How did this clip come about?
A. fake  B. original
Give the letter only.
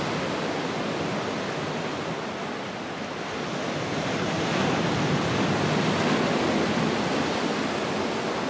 B